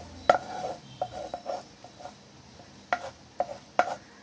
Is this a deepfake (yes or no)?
no